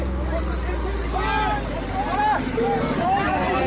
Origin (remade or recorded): recorded